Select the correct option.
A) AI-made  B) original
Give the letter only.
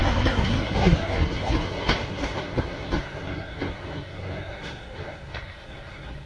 A